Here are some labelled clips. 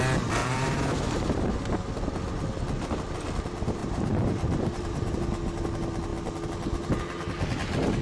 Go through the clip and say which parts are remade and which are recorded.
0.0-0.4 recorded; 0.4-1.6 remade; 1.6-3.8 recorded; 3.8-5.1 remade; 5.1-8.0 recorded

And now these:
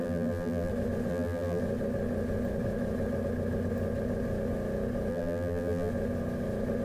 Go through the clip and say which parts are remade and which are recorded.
0.0-0.7 remade; 0.7-1.1 recorded; 1.1-1.6 remade; 1.6-5.1 recorded; 5.1-5.9 remade; 5.9-6.8 recorded

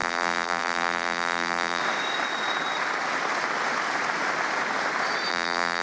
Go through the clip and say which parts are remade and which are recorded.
0.0-1.8 remade; 1.8-5.3 recorded; 5.3-5.8 remade